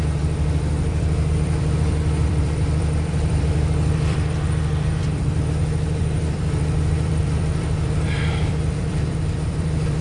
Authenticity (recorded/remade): remade